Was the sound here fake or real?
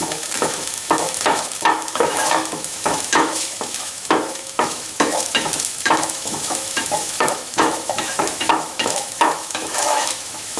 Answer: fake